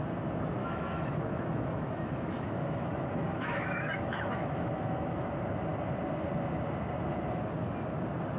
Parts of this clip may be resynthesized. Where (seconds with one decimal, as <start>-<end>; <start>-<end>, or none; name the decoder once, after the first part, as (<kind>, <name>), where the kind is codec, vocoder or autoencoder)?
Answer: 0.6-5.3 (autoencoder, DAC-VAE)